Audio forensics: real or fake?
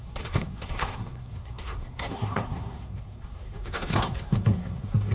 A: fake